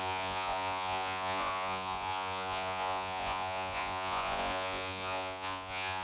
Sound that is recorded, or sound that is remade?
remade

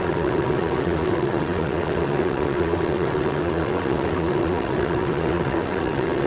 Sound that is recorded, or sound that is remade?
remade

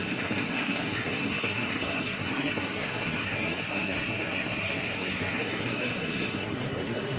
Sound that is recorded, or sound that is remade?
remade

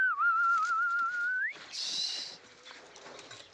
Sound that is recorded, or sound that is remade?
recorded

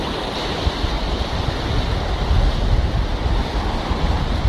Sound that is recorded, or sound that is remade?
recorded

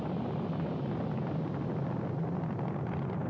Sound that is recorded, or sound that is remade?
recorded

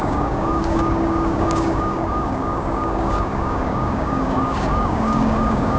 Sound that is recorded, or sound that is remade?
remade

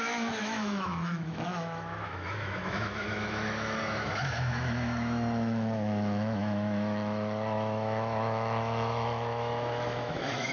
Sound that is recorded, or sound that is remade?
remade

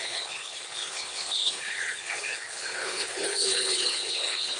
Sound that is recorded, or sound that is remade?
remade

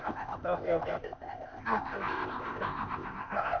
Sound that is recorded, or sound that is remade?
remade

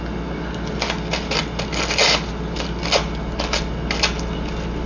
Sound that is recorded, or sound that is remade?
recorded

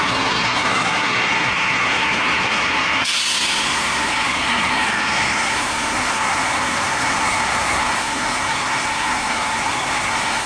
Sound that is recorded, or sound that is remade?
remade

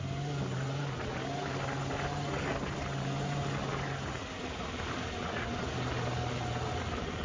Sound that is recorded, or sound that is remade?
recorded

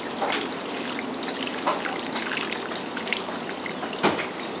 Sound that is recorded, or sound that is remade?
recorded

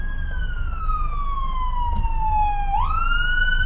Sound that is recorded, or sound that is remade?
recorded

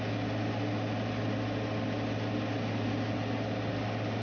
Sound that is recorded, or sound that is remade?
recorded